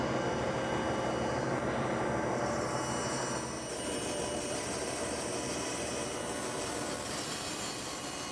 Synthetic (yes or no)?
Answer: no